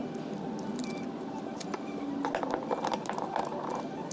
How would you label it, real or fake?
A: real